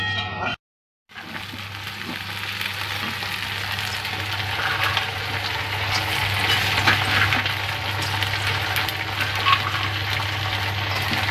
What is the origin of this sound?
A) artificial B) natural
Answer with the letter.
B